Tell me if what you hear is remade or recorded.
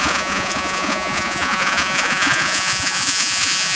remade